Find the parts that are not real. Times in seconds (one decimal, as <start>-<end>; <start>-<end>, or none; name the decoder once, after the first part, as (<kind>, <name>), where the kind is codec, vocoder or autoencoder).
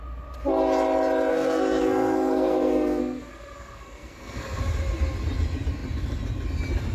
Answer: 1.3-4.6 (codec, SNAC)